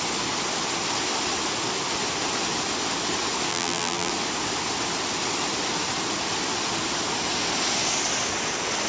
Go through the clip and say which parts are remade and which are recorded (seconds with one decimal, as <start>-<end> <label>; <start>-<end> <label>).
0.0-3.5 recorded; 3.5-4.1 remade; 4.1-8.9 recorded